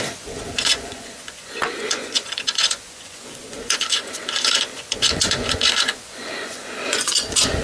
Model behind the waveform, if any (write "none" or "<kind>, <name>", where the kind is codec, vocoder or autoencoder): vocoder, Vocos